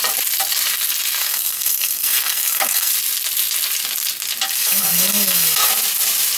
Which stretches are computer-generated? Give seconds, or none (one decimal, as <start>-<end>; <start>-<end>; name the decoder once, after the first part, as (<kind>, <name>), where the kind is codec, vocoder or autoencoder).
1.2-2.9 (codec, SNAC); 4.6-5.7